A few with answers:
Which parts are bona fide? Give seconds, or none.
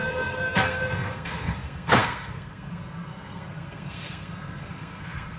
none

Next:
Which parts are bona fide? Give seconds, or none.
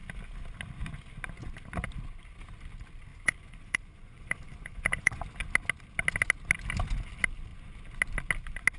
0.0-3.1; 5.2-8.8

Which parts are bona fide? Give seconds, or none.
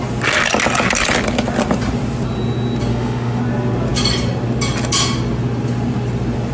0.0-2.9; 3.4-6.5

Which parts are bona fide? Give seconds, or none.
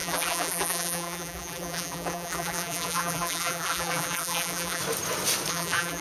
4.8-5.5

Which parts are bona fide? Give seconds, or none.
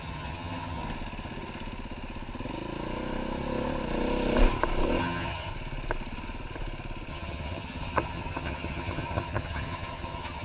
0.8-5.0; 5.5-7.1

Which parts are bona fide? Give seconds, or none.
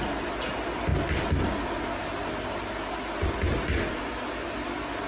0.0-5.1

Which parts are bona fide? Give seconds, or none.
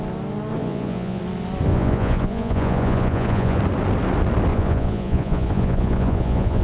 0.0-0.6; 1.2-1.7; 3.6-4.5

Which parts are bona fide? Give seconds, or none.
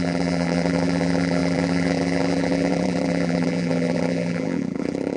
none